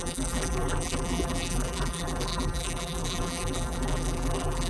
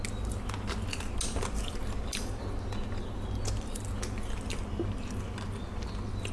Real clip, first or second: second